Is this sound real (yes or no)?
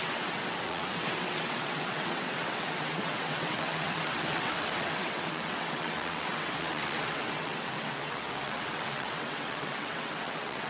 no